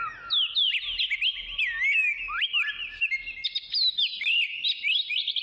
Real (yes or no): yes